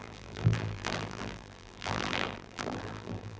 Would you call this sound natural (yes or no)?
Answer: no